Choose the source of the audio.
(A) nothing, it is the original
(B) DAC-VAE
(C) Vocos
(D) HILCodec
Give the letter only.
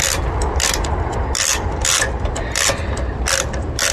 A